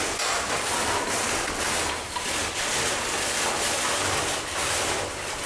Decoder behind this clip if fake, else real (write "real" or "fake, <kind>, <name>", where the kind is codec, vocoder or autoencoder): real